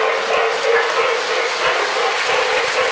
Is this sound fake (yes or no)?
no